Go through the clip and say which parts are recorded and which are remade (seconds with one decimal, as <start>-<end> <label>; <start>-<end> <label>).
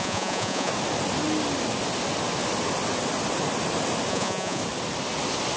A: 0.0-0.7 remade; 0.7-4.1 recorded; 4.1-4.6 remade; 4.6-5.6 recorded